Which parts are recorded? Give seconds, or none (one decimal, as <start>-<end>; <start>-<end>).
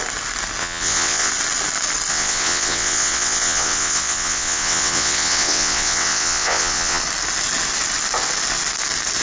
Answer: 0.0-0.6; 1.3-2.1; 7.0-9.2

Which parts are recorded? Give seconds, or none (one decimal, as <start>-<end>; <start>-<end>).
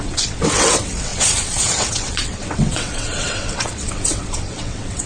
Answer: none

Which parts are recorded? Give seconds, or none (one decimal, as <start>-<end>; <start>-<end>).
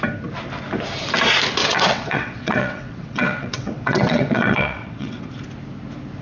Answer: 0.0-1.6; 5.3-6.2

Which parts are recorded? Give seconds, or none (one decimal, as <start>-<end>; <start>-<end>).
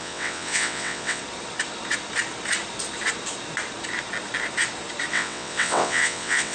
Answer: 1.2-5.1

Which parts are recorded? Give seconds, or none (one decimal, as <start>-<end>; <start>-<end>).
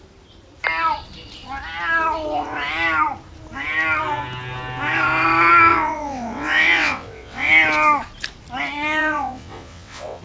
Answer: 0.0-5.7; 7.5-9.0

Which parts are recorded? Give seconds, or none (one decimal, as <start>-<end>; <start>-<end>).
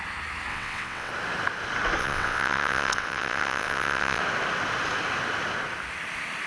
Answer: 0.0-0.5; 1.1-2.0; 4.2-6.5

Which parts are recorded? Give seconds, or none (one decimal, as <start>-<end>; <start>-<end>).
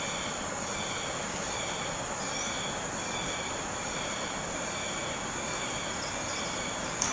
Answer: 0.0-7.1